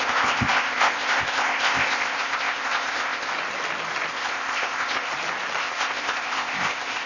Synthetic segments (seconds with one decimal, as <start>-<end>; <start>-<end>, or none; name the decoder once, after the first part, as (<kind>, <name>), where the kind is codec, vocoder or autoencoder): 0.0-3.3 (codec, ZipCodec); 4.1-5.1; 5.6-7.1